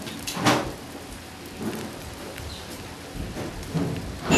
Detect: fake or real real